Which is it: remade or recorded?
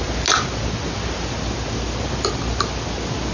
recorded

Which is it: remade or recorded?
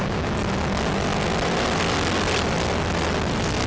recorded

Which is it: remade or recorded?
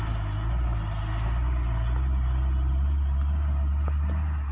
recorded